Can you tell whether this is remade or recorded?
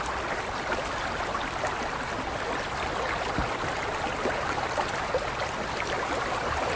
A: recorded